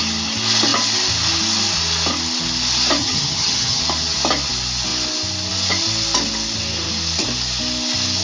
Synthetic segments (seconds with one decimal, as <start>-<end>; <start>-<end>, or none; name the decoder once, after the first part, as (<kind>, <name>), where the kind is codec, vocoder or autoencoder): 3.0-3.8 (vocoder, HiFi-GAN)